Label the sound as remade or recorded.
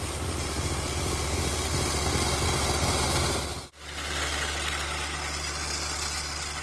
recorded